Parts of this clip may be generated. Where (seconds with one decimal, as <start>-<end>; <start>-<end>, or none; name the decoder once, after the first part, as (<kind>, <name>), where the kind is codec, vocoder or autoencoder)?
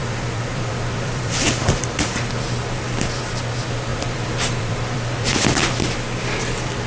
0.0-2.3 (vocoder, BigVGAN v2); 3.9-5.6